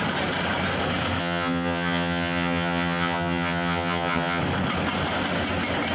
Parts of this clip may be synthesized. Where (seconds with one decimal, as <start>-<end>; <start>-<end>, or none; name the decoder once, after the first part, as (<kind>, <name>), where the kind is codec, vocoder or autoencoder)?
1.2-4.4 (vocoder, HiFi-GAN)